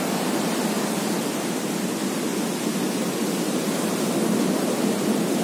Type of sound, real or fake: real